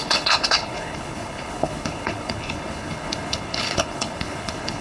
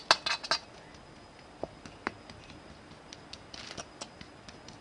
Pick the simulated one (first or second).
first